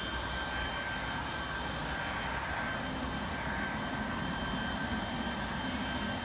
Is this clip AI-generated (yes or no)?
no